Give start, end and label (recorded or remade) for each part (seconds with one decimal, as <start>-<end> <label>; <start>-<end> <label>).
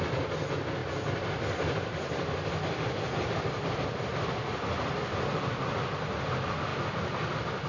0.0-0.8 recorded; 0.8-5.4 remade; 5.4-6.7 recorded; 6.7-7.7 remade